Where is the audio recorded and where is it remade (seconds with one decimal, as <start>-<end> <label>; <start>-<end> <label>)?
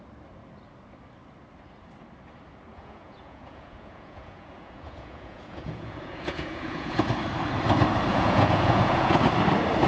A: 0.0-2.7 recorded; 2.7-7.1 remade; 7.1-8.1 recorded; 8.1-9.2 remade; 9.2-9.9 recorded